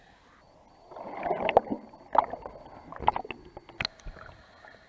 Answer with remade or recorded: recorded